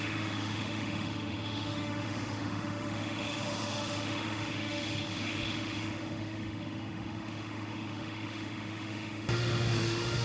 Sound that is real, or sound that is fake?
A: fake